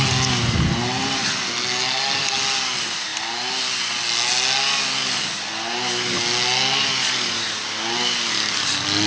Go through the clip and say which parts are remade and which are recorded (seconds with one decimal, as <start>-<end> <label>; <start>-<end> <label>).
0.0-9.1 recorded